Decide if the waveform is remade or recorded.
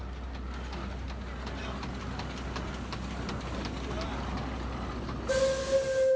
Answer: recorded